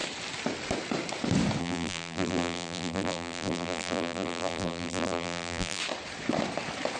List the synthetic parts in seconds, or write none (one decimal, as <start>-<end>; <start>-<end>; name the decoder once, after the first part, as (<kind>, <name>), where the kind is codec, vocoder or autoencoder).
1.6-5.8 (vocoder, BigVGAN v2)